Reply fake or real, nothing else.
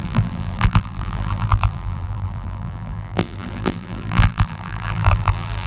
fake